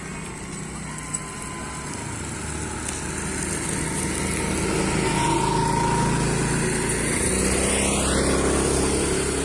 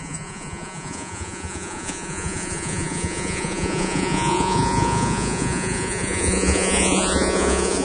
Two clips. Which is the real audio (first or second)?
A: first